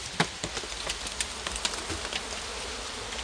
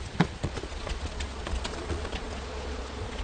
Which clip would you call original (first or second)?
first